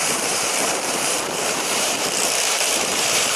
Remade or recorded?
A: remade